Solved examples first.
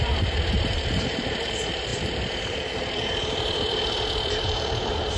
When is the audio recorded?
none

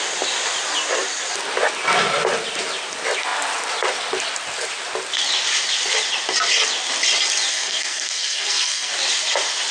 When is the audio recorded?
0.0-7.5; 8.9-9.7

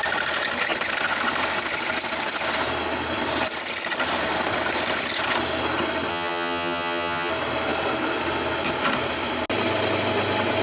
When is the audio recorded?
0.0-6.1; 7.3-10.6

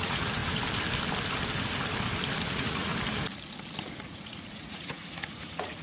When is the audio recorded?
0.4-2.4; 2.9-3.8

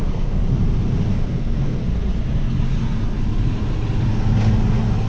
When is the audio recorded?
0.4-1.1; 1.8-5.1

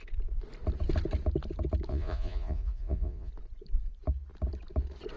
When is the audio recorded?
0.0-1.9; 3.3-5.2

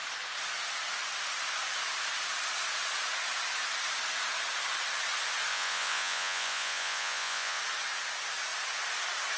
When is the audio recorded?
0.0-5.5; 7.6-9.4